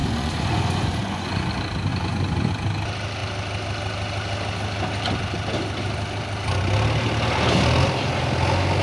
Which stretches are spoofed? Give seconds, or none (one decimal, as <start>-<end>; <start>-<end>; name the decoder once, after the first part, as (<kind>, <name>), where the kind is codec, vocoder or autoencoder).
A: 0.0-1.5 (vocoder, Vocos); 1.9-2.5